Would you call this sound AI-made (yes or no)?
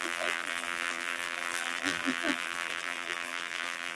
yes